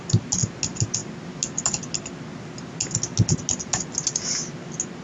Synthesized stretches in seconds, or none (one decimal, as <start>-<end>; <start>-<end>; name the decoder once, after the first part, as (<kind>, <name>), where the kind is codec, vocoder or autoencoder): none